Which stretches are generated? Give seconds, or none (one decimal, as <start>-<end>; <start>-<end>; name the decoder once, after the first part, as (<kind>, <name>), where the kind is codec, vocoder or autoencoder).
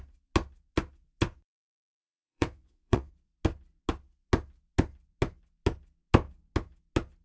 2.0-3.1 (vocoder, WaveNeXt)